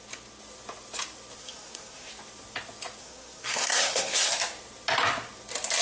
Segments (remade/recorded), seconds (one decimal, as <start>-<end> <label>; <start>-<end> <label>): 0.0-1.4 recorded; 1.4-2.1 remade; 2.1-3.0 recorded; 3.0-4.3 remade; 4.3-5.8 recorded